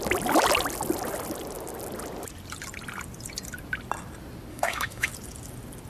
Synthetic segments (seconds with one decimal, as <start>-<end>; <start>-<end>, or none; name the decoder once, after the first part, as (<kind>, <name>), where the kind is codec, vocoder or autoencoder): 4.5-5.1 (autoencoder, DAC-VAE)